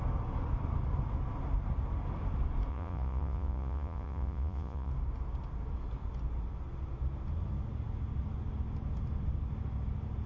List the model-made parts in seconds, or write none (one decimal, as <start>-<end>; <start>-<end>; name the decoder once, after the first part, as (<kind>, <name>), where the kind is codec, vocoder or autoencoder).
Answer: 2.7-4.9 (vocoder, Vocos)